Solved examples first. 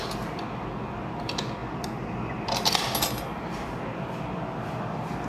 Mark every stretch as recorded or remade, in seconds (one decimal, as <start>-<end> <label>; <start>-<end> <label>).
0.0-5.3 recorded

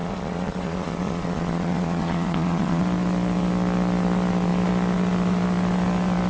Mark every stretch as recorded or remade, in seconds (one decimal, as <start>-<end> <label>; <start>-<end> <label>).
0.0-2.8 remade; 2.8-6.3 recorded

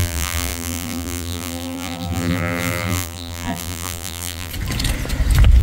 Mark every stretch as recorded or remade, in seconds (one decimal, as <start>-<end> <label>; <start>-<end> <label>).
0.0-4.5 remade; 4.5-5.6 recorded

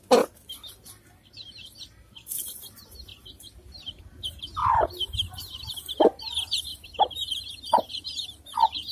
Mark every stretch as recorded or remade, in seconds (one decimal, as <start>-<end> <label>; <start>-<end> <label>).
0.0-3.1 recorded; 3.1-4.0 remade; 4.0-4.6 recorded; 4.6-5.7 remade; 5.7-6.7 recorded; 6.7-7.9 remade; 7.9-8.9 recorded